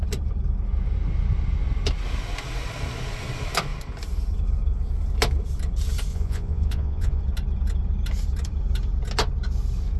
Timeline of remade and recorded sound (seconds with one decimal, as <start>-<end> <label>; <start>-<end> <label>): 0.0-6.1 recorded; 6.1-7.2 remade; 7.2-10.0 recorded